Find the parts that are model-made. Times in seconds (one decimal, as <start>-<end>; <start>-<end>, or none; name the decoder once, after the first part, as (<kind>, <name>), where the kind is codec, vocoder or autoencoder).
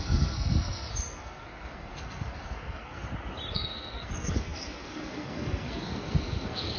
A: 0.0-3.0 (codec, SNAC); 3.5-6.8